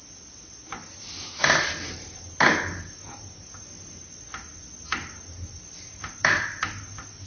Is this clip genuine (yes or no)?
yes